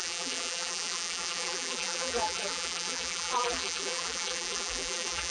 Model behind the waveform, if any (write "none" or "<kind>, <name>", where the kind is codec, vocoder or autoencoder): vocoder, BigVGAN v2